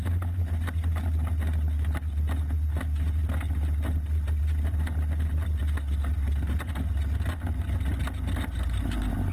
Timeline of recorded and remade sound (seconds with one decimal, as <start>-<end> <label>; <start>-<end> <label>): 0.0-9.3 recorded